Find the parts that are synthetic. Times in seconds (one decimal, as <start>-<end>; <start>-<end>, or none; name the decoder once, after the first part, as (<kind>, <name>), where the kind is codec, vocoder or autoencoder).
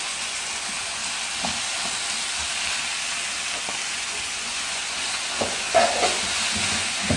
0.0-1.0 (vocoder, Vocos); 3.9-7.2